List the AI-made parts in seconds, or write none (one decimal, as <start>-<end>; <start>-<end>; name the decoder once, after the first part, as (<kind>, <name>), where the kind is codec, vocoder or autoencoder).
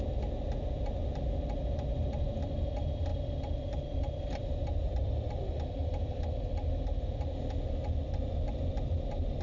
none